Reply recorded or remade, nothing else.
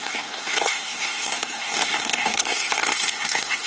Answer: remade